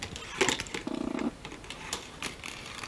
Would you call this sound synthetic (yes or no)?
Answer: no